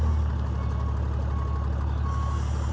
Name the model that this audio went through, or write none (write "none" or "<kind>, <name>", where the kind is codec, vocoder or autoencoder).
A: none